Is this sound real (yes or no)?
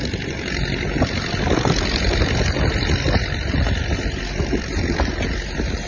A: yes